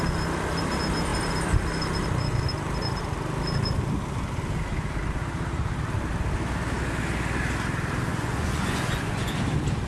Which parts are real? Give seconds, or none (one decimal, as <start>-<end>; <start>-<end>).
0.0-8.1; 9.3-9.9